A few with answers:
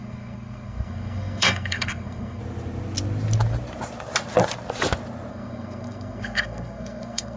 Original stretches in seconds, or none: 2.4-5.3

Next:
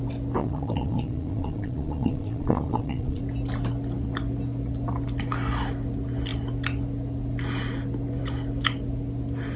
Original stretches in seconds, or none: 0.0-0.4; 3.2-9.6

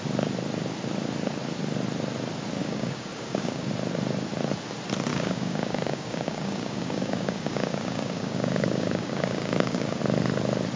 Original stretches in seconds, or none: 0.0-2.6; 3.7-5.1; 10.0-10.8

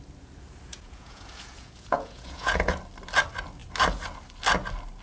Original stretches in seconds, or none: 0.0-0.7; 2.8-5.0

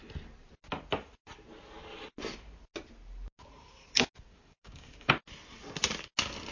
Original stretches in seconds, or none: 0.0-4.3; 5.1-6.5

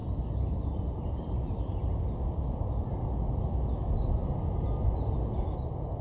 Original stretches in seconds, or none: 1.6-6.0

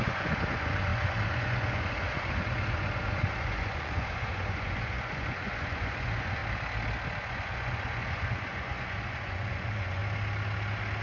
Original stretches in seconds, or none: 6.4-7.2; 10.0-11.0